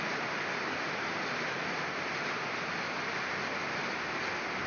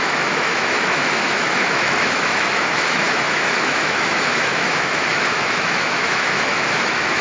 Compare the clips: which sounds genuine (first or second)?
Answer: first